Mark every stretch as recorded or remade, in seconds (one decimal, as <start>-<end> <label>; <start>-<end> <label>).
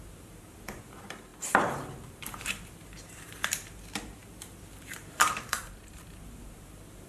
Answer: 0.0-7.1 remade